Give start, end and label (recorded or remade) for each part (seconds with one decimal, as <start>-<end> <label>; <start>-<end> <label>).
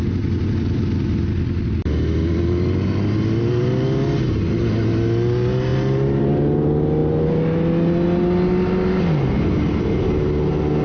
0.0-10.8 recorded